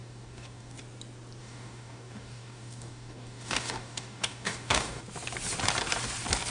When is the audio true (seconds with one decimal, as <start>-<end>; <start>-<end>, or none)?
0.8-1.4; 5.0-6.5